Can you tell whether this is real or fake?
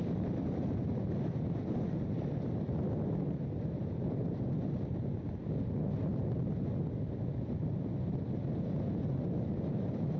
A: real